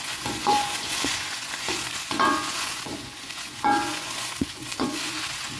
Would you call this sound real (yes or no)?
no